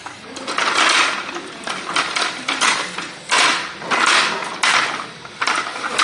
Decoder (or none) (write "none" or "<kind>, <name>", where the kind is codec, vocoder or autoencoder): none